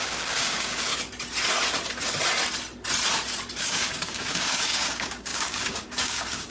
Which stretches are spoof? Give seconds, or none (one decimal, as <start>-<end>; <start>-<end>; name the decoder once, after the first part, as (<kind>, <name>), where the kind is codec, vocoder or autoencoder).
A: 0.0-0.9 (codec, DAC); 3.6-6.5